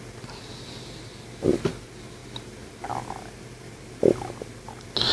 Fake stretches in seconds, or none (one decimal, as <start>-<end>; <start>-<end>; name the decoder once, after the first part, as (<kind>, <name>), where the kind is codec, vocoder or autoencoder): none